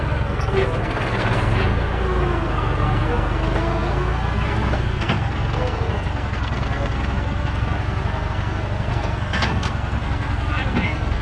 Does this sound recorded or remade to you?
remade